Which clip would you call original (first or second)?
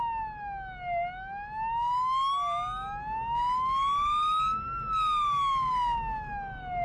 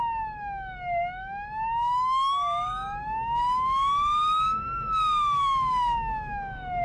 first